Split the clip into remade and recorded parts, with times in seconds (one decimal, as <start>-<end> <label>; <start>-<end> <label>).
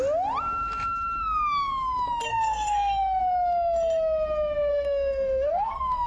0.0-2.3 recorded; 2.3-3.2 remade; 3.2-4.7 recorded; 4.7-6.1 remade